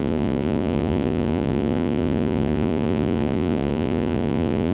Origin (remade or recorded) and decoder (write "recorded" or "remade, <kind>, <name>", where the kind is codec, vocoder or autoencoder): remade, vocoder, Vocos